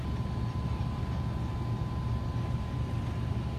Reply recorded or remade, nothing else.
recorded